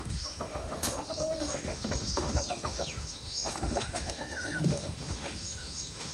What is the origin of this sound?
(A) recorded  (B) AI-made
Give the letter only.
B